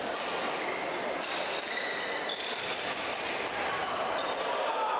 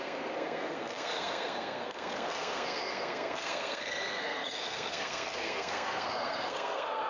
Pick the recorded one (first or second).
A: first